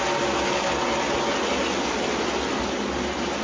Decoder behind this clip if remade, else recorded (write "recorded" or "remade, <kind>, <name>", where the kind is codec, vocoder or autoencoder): recorded